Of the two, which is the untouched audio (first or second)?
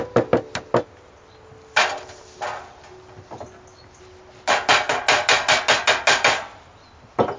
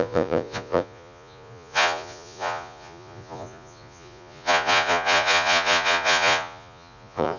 first